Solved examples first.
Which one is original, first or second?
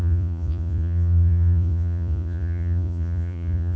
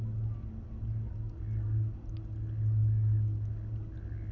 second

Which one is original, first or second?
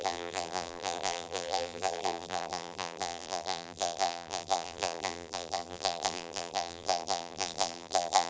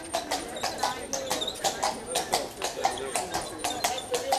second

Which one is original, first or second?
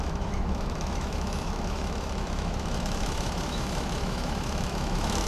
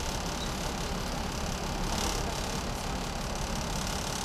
second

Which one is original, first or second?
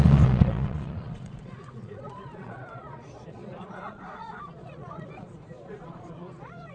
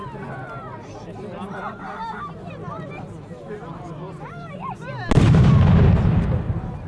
second